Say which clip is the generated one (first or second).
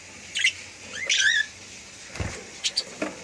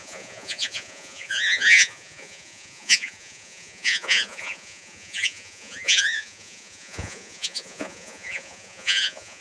second